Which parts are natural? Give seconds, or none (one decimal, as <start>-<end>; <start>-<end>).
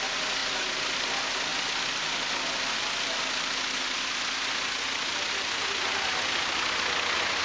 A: 0.0-7.4